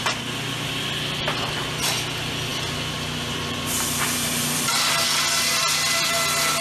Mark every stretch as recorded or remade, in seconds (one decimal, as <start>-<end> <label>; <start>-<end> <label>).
0.0-2.5 recorded; 2.5-4.9 remade; 4.9-6.6 recorded